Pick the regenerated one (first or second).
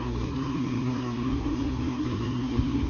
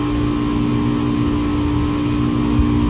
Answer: first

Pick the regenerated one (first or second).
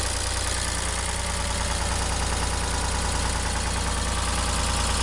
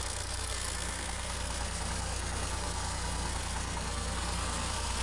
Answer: second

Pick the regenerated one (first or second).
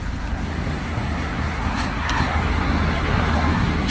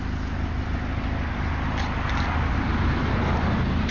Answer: first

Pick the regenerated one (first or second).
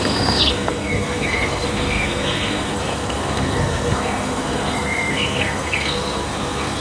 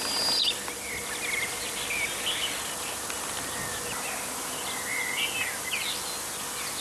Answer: first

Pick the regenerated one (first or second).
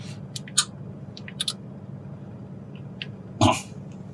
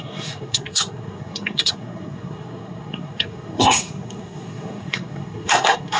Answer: second